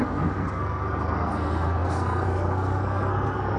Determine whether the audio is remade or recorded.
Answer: remade